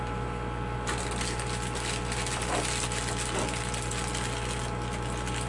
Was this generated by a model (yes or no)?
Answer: no